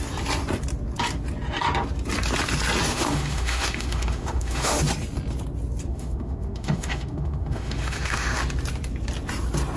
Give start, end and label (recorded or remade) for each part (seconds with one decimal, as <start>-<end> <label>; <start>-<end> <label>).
0.0-2.9 recorded; 2.9-4.8 remade; 4.8-5.9 recorded; 5.9-8.4 remade; 8.4-9.8 recorded